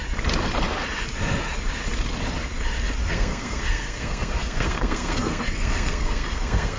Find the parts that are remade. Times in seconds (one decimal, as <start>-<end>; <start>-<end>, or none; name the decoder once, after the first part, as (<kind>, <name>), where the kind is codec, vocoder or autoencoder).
3.0-6.8 (codec, SNAC)